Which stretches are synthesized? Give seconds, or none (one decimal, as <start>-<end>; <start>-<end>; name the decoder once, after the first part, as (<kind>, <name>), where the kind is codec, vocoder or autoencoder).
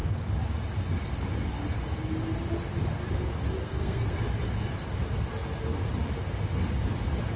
3.6-4.2 (codec, SNAC)